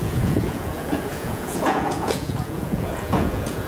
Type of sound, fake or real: fake